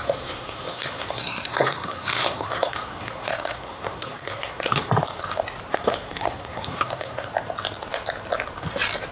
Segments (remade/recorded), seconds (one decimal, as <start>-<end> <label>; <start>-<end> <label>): 0.0-4.9 remade; 4.9-5.7 recorded; 5.7-7.3 remade; 7.3-9.1 recorded